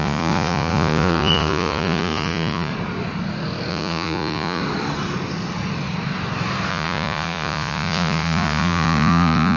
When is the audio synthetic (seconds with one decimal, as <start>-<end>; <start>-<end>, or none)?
0.0-2.7; 3.7-4.6; 6.7-9.6